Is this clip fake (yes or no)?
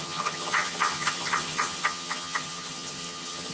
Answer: yes